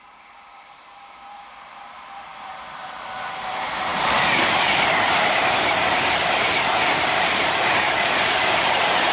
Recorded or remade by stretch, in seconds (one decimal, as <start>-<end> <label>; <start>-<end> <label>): 0.0-2.5 remade; 2.5-3.1 recorded; 3.1-9.1 remade